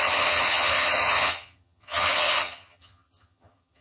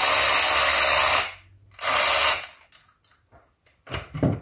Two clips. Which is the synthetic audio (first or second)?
first